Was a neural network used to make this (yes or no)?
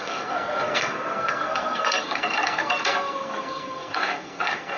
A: yes